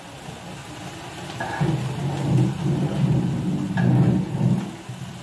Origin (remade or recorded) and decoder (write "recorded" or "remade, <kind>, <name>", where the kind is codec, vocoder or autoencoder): recorded